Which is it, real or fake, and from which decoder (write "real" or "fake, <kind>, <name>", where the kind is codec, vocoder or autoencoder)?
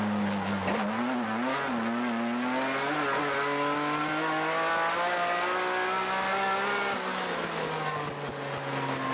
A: real